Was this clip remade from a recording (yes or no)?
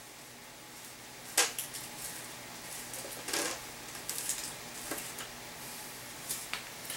no